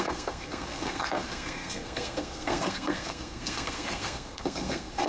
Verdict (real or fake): fake